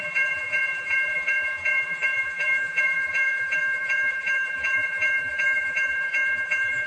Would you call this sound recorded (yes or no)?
no